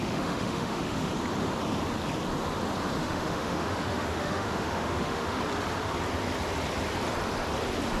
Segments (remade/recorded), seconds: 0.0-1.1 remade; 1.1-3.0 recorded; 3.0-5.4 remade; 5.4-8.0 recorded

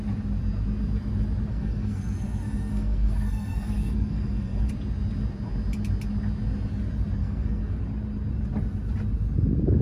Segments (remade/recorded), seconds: 0.0-1.5 recorded; 1.5-4.7 remade; 4.7-7.2 recorded; 7.2-7.8 remade; 7.8-9.8 recorded